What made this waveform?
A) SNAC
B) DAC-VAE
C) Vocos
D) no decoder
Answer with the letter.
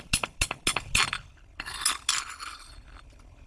D